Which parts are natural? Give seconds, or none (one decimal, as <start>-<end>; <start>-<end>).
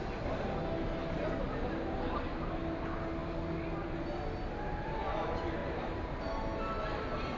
0.0-5.6; 6.2-7.4